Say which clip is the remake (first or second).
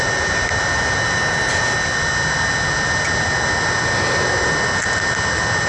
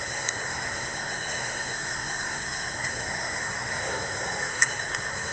second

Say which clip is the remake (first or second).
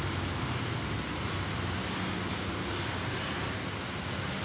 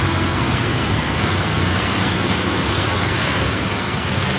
second